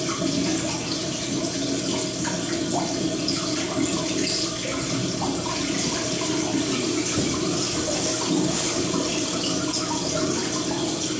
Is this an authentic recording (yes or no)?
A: yes